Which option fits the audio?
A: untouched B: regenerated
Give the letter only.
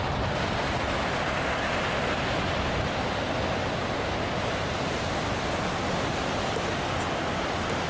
A